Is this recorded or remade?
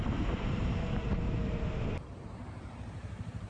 remade